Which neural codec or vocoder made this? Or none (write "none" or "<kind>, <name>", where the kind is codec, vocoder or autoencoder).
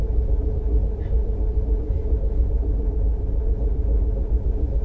none